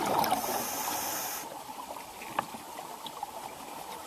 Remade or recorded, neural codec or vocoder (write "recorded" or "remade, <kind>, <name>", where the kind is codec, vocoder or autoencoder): recorded